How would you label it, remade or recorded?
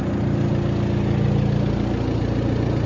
recorded